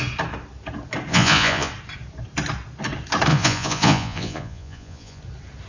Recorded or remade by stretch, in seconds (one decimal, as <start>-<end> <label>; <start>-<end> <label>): 0.0-1.1 recorded; 1.1-1.7 remade; 1.7-3.3 recorded; 3.3-5.2 remade; 5.2-5.7 recorded